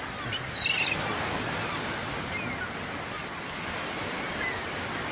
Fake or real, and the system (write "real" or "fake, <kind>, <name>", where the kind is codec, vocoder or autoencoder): real